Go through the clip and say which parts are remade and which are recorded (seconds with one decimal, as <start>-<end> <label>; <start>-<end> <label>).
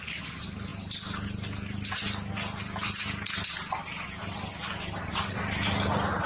0.0-6.3 recorded